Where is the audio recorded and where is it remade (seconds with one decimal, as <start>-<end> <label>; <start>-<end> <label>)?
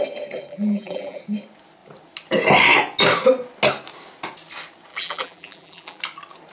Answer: 0.0-0.5 recorded; 0.5-1.2 remade; 1.2-4.9 recorded; 4.9-6.0 remade; 6.0-6.5 recorded